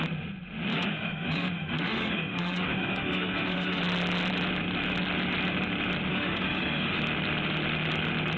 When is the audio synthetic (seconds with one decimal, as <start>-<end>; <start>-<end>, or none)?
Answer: 0.7-3.8; 6.1-7.0